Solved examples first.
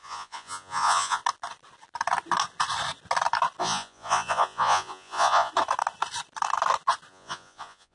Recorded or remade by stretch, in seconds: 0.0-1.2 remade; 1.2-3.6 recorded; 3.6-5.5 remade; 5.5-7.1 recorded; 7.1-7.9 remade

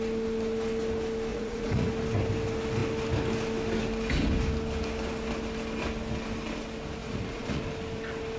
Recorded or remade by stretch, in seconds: 0.0-1.3 recorded; 1.3-1.9 remade; 1.9-7.0 recorded; 7.0-7.6 remade; 7.6-8.4 recorded

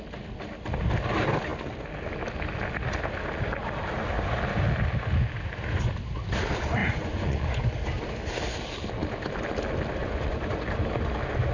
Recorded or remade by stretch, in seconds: 0.0-6.8 recorded; 6.8-7.6 remade; 7.6-10.0 recorded; 10.0-10.6 remade; 10.6-11.5 recorded

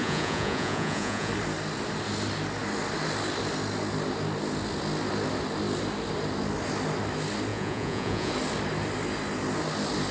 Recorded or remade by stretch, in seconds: 0.0-1.3 remade; 1.3-7.5 recorded; 7.5-8.3 remade; 8.3-10.1 recorded

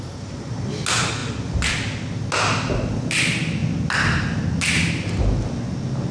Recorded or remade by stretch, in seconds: 0.0-6.1 recorded

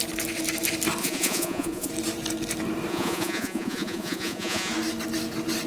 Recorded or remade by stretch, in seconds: 0.0-1.0 recorded; 1.0-1.9 remade; 1.9-2.9 recorded; 2.9-4.7 remade; 4.7-5.7 recorded

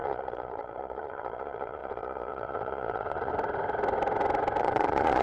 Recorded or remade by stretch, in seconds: 0.0-3.3 remade; 3.3-4.6 recorded; 4.6-5.2 remade